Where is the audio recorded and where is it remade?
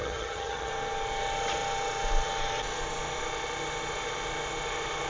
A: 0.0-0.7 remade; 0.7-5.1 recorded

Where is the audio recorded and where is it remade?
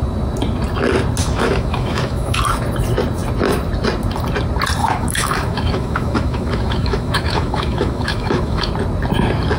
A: 0.0-1.2 recorded; 1.2-2.4 remade; 2.4-4.8 recorded; 4.8-8.7 remade; 8.7-9.6 recorded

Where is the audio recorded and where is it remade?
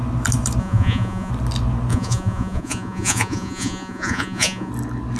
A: 0.0-0.6 recorded; 0.6-1.3 remade; 1.3-1.9 recorded; 1.9-4.7 remade; 4.7-5.2 recorded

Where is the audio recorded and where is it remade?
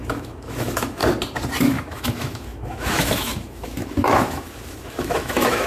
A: 0.0-1.0 remade; 1.0-1.6 recorded; 1.6-5.7 remade